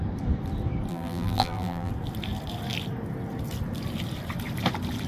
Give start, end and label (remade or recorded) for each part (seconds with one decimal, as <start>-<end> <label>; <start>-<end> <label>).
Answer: 0.0-0.9 recorded; 0.9-1.9 remade; 1.9-5.1 recorded